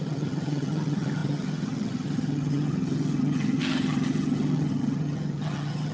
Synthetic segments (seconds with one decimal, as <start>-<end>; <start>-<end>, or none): 0.0-5.9